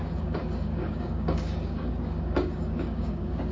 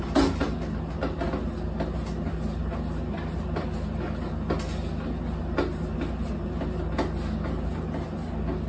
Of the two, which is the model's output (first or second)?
first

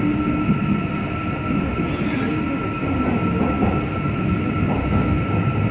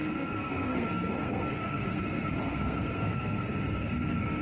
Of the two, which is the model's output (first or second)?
second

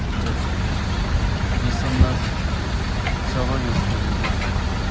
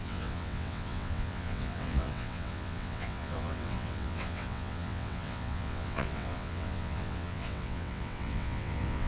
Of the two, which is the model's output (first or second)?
second